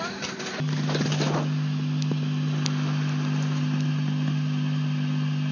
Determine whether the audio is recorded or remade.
recorded